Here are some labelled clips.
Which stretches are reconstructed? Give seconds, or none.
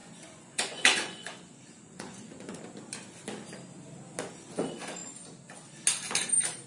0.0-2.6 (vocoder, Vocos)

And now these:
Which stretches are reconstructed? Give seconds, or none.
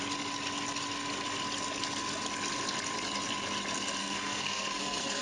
4.0-5.2 (codec, SNAC)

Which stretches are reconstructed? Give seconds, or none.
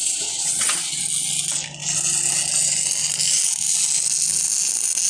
0.0-1.0 (vocoder, WaveNeXt)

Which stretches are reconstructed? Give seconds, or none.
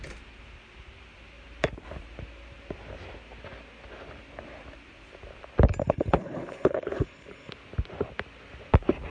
5.8-7.5 (codec, HILCodec)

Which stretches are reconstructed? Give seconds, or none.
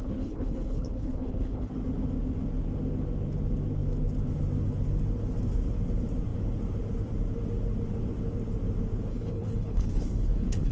0.0-1.7 (codec, HILCodec); 9.1-10.7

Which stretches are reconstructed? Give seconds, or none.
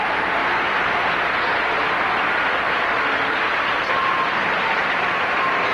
0.0-0.4 (vocoder, BigVGAN v2); 3.8-5.7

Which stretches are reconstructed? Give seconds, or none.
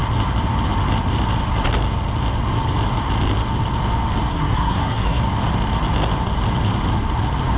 4.3-5.2 (codec, SNAC)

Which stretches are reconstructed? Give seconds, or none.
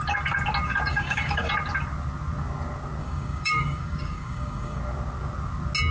0.9-1.5 (codec, DAC); 3.0-4.8